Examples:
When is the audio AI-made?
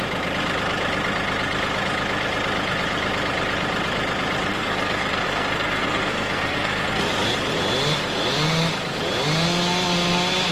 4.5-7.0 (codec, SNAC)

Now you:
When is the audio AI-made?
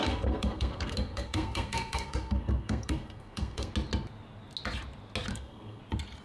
0.0-3.7 (codec, SNAC); 5.3-5.8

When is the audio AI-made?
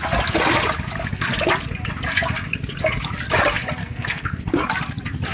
3.8-4.4 (codec, SNAC)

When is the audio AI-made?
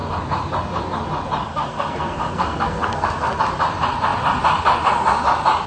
1.5-3.4 (codec, SNAC)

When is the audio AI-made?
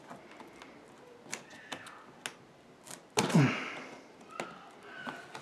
none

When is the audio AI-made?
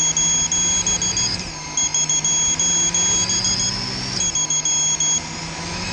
none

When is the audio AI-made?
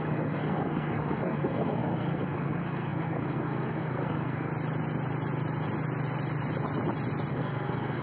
0.0-4.5 (codec, SNAC); 7.3-8.0